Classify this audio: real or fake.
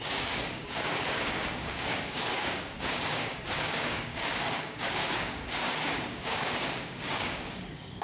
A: fake